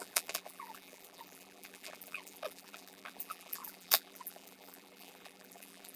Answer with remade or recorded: remade